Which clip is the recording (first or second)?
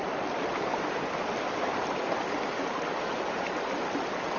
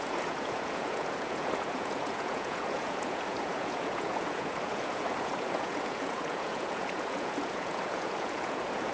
first